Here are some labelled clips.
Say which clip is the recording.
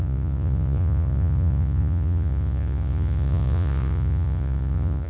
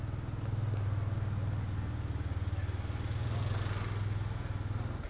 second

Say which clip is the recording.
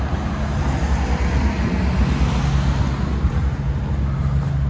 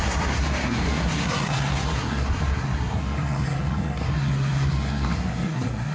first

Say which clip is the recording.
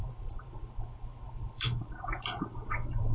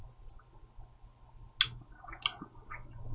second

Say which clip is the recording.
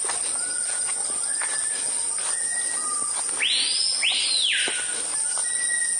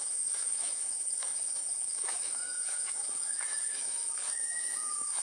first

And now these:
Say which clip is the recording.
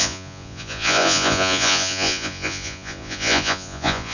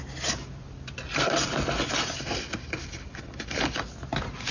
second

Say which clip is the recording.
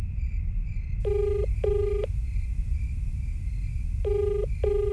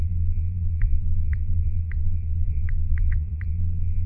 first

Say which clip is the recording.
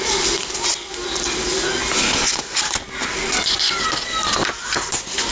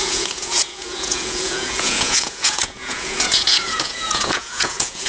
first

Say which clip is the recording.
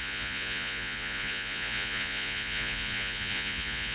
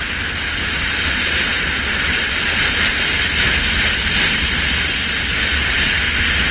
second